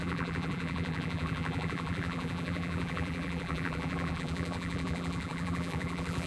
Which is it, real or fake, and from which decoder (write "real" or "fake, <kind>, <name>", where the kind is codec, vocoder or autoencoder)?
fake, vocoder, BigVGAN v2